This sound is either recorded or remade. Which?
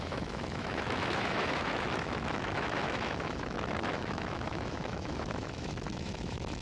remade